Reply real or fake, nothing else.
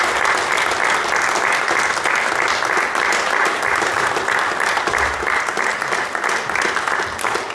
real